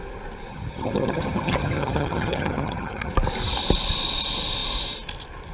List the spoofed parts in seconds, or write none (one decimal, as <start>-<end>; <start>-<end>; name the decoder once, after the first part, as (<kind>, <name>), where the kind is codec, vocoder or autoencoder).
0.5-3.1 (vocoder, HiFi-GAN)